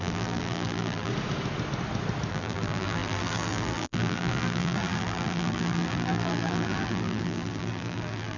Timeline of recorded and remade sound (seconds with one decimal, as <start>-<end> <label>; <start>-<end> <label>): 0.0-1.1 remade; 1.1-2.3 recorded; 2.3-8.4 remade